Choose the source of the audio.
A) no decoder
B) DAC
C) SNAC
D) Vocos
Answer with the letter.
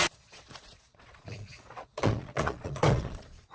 D